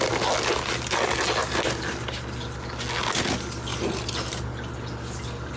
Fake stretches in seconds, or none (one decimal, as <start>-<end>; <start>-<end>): 3.7-4.4